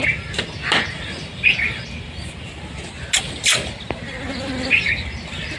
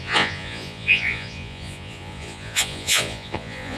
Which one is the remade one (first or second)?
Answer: second